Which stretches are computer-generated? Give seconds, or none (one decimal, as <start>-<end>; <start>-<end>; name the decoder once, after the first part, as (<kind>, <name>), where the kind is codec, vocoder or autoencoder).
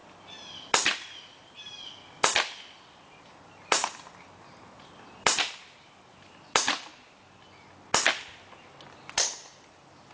0.0-6.9 (vocoder, BigVGAN v2); 8.1-10.1